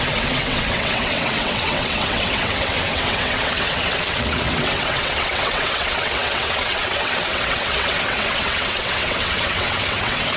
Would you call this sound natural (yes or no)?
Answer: no